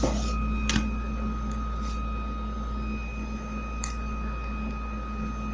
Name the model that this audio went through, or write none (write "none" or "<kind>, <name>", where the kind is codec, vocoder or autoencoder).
none